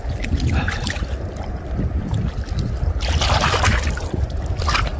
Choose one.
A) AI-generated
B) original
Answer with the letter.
B